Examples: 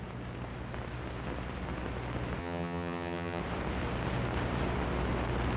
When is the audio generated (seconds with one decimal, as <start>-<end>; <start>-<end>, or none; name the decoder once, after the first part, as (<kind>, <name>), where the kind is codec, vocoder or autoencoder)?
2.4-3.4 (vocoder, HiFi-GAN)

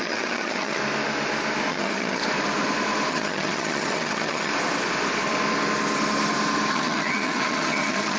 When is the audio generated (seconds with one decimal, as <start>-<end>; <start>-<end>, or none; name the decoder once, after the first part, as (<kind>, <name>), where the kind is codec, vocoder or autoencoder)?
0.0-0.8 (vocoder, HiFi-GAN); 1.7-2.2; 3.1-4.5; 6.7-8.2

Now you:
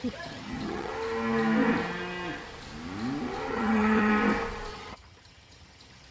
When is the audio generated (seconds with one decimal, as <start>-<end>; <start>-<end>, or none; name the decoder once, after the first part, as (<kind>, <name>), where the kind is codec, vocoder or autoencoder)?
0.0-0.9 (vocoder, HiFi-GAN); 3.5-4.1; 4.7-6.1

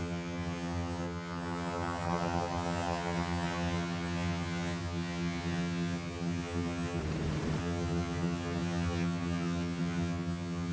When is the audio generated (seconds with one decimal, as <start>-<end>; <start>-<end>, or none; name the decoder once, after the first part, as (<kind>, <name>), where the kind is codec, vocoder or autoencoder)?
0.0-7.0 (vocoder, HiFi-GAN); 7.6-10.7